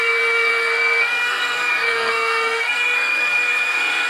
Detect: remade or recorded remade